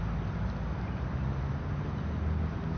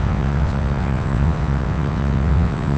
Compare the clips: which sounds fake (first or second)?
second